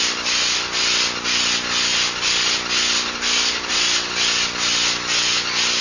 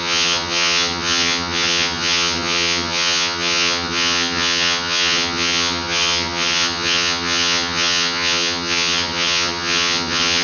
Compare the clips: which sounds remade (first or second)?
second